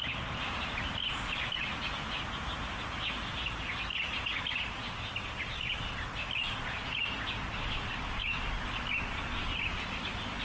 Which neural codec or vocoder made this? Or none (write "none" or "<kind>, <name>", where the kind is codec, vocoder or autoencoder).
none